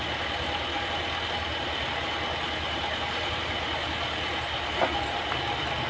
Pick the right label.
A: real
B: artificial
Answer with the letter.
A